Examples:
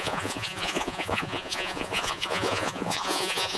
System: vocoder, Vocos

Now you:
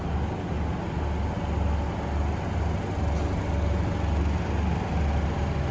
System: none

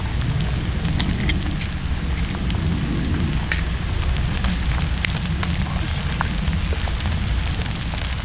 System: none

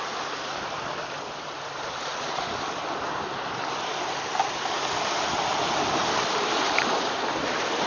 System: vocoder, BigVGAN v2